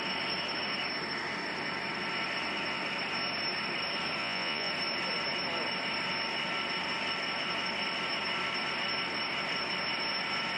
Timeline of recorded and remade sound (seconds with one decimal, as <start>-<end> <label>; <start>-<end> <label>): 0.0-4.2 recorded; 4.2-4.7 remade; 4.7-10.6 recorded

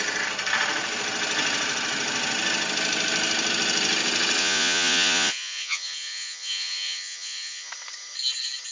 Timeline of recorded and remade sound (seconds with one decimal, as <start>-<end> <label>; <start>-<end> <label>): 0.0-4.4 recorded; 4.4-7.7 remade; 7.7-8.7 recorded